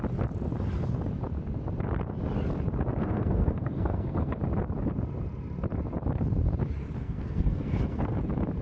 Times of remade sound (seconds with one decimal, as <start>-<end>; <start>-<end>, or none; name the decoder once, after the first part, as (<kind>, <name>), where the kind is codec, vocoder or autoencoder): 3.0-4.4 (codec, SNAC); 7.0-8.2